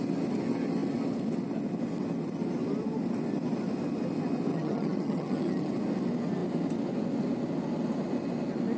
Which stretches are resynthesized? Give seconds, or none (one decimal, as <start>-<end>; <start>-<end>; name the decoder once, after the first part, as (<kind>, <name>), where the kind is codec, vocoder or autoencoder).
4.5-5.7 (vocoder, HiFi-GAN)